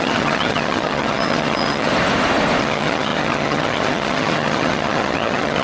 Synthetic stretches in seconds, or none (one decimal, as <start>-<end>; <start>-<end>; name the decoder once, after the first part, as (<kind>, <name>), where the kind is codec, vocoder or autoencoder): 0.0-1.9 (vocoder, HiFi-GAN); 2.6-5.6